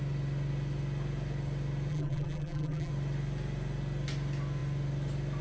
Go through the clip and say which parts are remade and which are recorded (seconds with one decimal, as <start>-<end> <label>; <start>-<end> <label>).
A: 0.0-1.9 recorded; 1.9-2.9 remade; 2.9-5.4 recorded

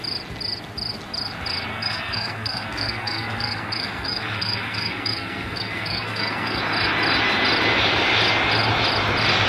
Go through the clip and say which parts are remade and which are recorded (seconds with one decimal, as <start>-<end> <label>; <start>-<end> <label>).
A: 0.0-1.7 recorded; 1.7-6.6 remade; 6.6-9.5 recorded

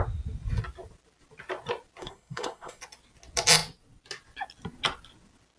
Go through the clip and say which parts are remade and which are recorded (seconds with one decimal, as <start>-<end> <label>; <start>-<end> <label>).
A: 0.0-2.0 recorded; 2.0-2.8 remade; 2.8-5.6 recorded

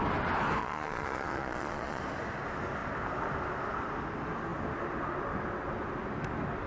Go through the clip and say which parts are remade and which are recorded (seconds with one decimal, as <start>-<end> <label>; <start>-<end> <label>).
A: 0.0-0.6 recorded; 0.6-2.0 remade; 2.0-6.7 recorded